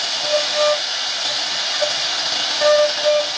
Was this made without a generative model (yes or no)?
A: yes